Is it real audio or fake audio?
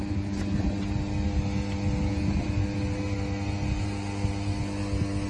real